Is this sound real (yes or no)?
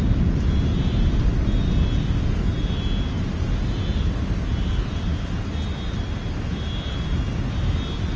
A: yes